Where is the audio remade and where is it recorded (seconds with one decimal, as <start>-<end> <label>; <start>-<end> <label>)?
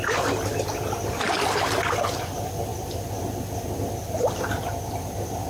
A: 0.0-5.5 recorded